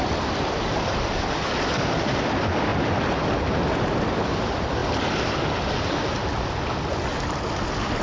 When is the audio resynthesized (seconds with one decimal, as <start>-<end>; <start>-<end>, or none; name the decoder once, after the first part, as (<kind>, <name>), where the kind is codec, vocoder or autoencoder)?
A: none